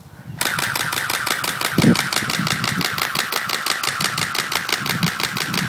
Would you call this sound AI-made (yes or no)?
no